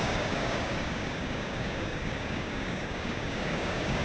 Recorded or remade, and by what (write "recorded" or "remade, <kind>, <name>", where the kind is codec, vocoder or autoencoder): remade, codec, DAC